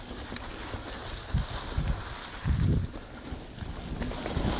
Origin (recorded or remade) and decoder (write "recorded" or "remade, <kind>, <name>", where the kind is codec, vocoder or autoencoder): recorded